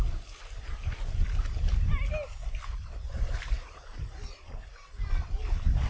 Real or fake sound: real